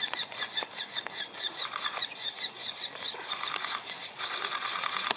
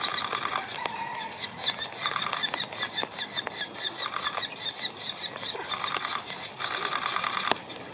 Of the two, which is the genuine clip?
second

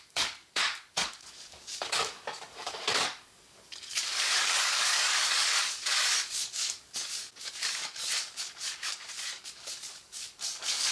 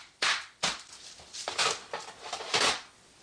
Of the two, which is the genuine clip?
second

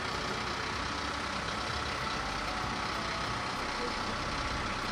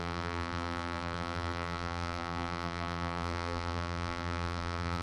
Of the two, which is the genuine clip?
first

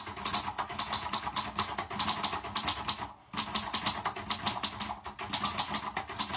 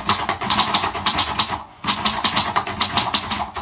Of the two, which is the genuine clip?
first